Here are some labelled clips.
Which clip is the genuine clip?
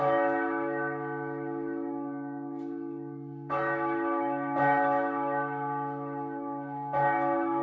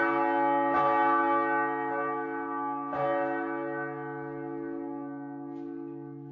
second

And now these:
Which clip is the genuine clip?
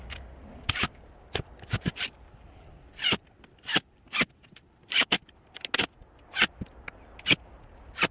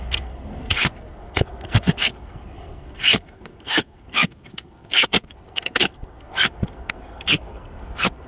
first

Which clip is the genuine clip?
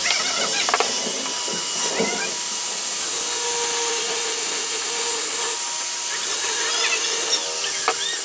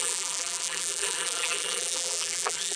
first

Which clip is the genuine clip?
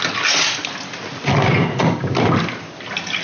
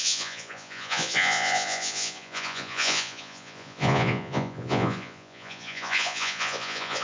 first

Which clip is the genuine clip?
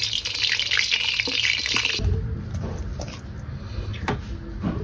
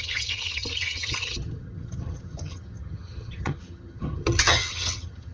first